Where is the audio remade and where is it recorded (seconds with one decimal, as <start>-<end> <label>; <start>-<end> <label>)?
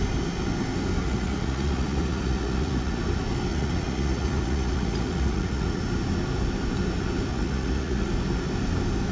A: 0.0-1.0 recorded; 1.0-3.0 remade; 3.0-3.5 recorded; 3.5-5.8 remade; 5.8-7.3 recorded; 7.3-8.1 remade; 8.1-9.1 recorded